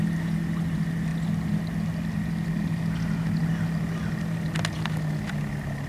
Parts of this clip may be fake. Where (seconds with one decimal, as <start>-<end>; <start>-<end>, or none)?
none